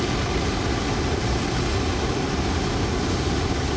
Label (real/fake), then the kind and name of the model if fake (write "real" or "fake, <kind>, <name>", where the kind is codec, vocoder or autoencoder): real